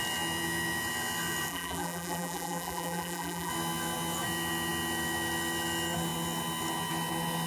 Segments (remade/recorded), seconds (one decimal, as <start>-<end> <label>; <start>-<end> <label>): 0.0-1.5 recorded; 1.5-3.5 remade; 3.5-7.5 recorded